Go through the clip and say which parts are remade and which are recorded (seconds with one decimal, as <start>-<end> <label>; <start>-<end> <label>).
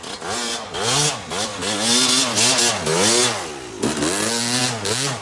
0.0-5.2 recorded